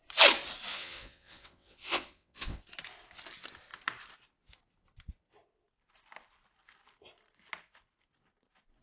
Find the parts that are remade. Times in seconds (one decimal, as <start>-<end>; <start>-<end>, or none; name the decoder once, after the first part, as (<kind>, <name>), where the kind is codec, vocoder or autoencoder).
0.7-2.6 (vocoder, WaveNeXt)